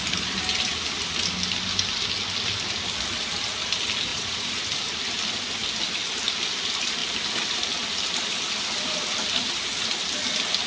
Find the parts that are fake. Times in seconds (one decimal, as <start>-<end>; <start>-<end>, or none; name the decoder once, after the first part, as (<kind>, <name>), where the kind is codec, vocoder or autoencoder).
4.1-4.6 (vocoder, Vocos)